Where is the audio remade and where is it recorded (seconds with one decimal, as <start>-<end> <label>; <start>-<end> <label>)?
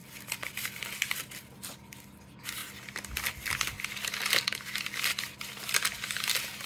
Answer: 0.0-6.7 recorded